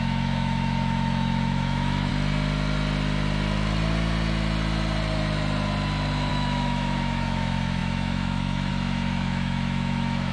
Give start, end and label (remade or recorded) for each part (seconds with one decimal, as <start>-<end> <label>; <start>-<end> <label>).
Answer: 0.0-2.1 remade; 2.1-6.3 recorded; 6.3-10.3 remade